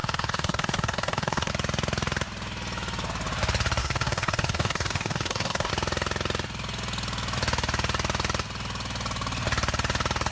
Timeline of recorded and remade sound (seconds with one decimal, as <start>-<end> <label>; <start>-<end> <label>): 0.0-1.5 remade; 1.5-3.8 recorded; 3.8-5.7 remade; 5.7-10.3 recorded